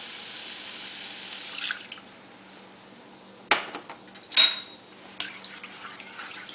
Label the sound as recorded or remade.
recorded